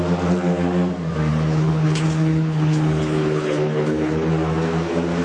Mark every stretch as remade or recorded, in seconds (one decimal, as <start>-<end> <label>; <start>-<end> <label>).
0.0-1.3 recorded; 1.3-4.3 remade; 4.3-5.2 recorded